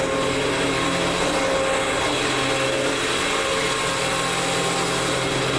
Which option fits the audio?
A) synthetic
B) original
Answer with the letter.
B